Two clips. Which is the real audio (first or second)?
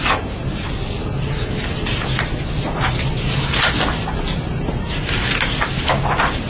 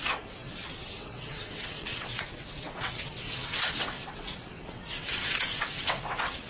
first